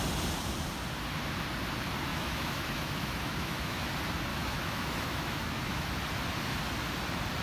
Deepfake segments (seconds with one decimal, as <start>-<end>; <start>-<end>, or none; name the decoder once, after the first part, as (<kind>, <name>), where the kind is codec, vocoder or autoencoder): 2.1-3.9 (autoencoder, DAC-VAE); 4.3-5.9